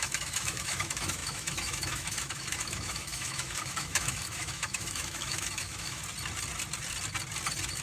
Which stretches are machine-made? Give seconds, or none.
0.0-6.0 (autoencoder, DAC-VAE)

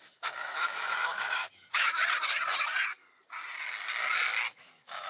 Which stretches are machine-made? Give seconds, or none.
0.0-2.0 (autoencoder, DAC-VAE); 4.5-5.1

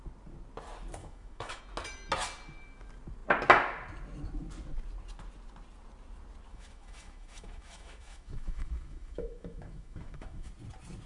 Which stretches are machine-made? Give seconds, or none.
1.0-1.6 (autoencoder, DAC-VAE); 6.5-10.5

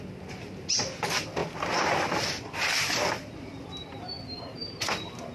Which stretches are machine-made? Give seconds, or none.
none

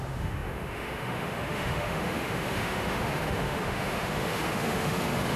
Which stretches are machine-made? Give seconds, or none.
0.0-5.4 (autoencoder, DAC-VAE)

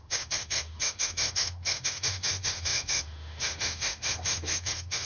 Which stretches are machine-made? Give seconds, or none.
0.0-5.1 (autoencoder, DAC-VAE)

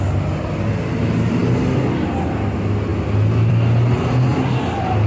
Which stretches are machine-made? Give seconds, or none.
none

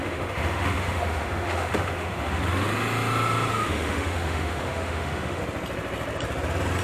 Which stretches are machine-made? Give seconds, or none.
0.0-2.4 (autoencoder, DAC-VAE); 3.5-5.4